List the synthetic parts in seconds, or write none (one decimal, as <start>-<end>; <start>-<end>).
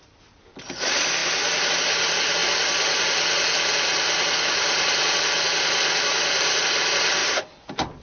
none